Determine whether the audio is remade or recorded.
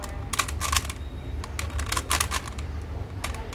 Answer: recorded